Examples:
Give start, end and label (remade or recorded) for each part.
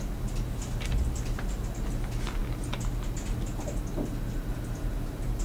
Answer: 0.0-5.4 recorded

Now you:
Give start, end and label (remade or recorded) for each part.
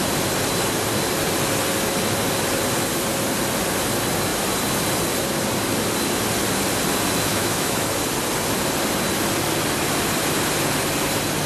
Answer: 0.0-7.3 recorded; 7.3-7.9 remade; 7.9-11.5 recorded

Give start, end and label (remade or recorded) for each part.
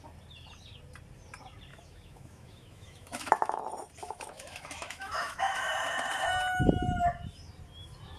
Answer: 0.0-1.7 recorded; 1.7-3.6 remade; 3.6-4.0 recorded; 4.0-5.7 remade; 5.7-8.2 recorded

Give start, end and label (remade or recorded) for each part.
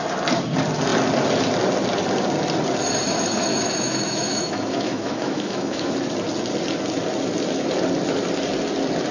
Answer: 0.0-3.5 recorded; 3.5-5.9 remade; 5.9-9.1 recorded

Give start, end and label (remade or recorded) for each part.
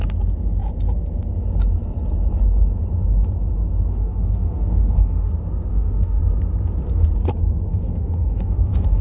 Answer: 0.0-3.9 recorded; 3.9-5.3 remade; 5.3-5.7 recorded; 5.7-6.2 remade; 6.2-7.7 recorded; 7.7-9.0 remade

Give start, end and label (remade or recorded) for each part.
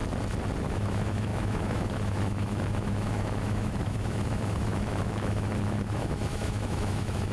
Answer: 0.0-0.6 recorded; 0.6-7.3 remade